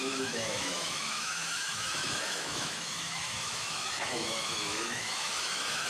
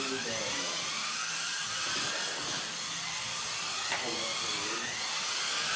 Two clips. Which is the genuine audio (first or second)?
second